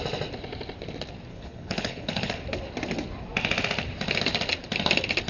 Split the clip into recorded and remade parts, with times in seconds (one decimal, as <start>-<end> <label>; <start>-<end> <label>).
0.0-1.3 recorded; 1.3-2.4 remade; 2.4-5.3 recorded